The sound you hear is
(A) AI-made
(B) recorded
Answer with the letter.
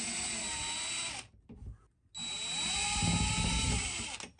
B